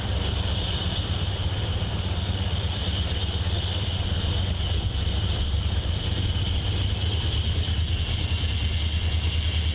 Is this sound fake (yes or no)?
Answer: yes